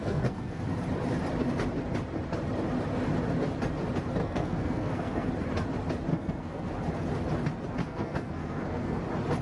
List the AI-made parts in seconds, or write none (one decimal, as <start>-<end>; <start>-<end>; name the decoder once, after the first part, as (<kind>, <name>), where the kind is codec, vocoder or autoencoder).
0.0-0.6 (codec, SNAC); 4.2-5.3; 6.1-6.7; 7.8-9.0